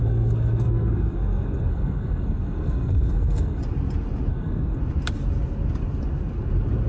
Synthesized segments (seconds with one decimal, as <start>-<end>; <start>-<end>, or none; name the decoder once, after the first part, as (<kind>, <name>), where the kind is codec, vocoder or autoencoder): 0.0-3.6 (codec, SNAC); 4.3-4.8